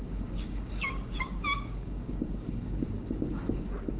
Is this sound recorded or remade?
remade